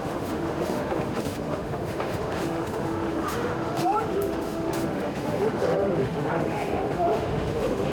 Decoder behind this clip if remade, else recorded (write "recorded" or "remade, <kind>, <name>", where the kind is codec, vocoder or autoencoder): remade, autoencoder, DAC-VAE